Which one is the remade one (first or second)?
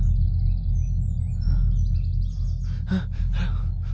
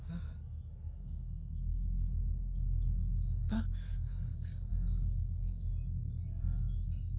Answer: second